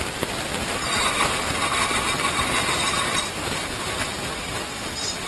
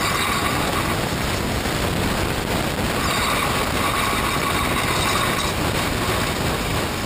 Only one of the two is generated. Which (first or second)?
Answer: first